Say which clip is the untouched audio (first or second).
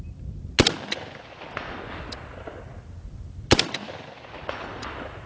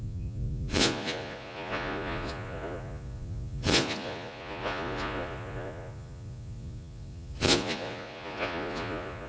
first